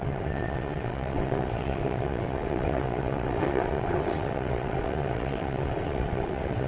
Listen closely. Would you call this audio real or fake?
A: fake